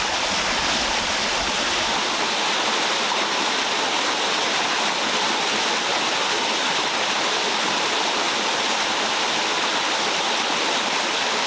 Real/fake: real